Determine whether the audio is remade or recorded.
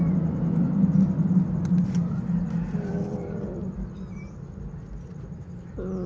recorded